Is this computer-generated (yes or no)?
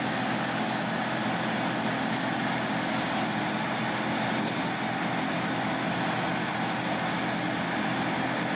no